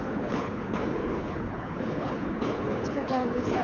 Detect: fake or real fake